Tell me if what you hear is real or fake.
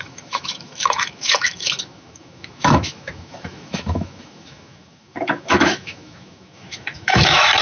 fake